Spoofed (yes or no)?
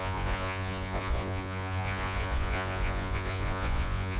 yes